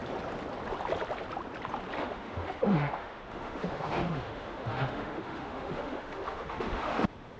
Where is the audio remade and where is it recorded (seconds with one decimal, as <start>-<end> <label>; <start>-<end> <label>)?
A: 0.0-2.0 recorded; 2.0-7.4 remade